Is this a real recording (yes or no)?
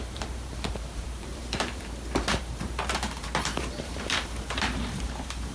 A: no